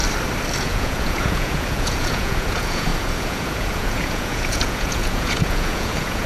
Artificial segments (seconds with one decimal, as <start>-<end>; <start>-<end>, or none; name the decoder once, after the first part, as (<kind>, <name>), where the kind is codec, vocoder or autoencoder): 0.6-6.3 (vocoder, Vocos)